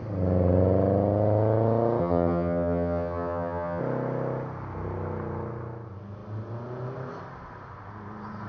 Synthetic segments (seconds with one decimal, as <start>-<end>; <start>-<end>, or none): 2.0-3.8